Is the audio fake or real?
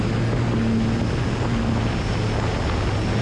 real